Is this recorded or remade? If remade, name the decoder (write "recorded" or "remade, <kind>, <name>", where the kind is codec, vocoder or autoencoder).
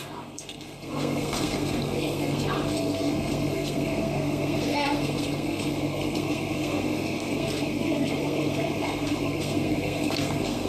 remade, codec, SNAC